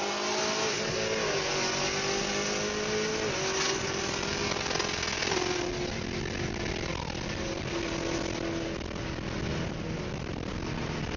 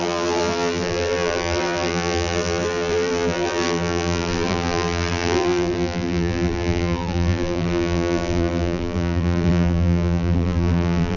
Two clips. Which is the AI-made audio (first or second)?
second